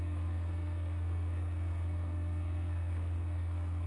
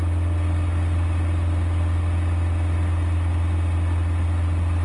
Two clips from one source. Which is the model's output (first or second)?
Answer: first